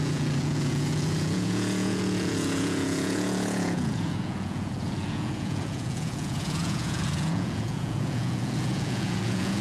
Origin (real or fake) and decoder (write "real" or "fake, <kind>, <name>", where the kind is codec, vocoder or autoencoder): fake, vocoder, Vocos